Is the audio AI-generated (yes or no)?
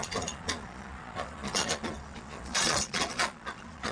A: yes